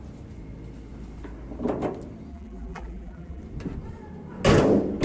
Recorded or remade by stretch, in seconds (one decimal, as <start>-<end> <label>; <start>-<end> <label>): 0.0-2.3 recorded; 2.3-3.4 remade; 3.4-5.0 recorded